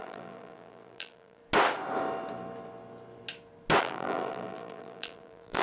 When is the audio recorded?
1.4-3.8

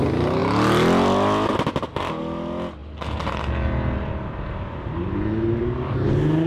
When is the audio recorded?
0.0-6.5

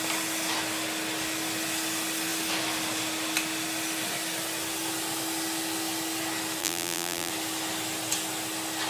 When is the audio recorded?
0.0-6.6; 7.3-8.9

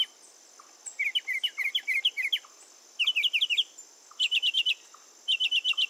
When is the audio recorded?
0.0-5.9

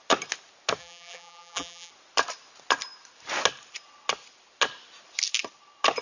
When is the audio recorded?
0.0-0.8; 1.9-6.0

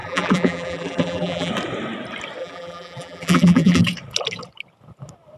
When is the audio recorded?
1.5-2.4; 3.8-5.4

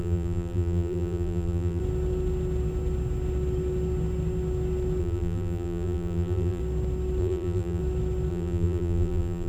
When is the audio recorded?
1.8-5.0; 6.6-7.2; 7.8-8.3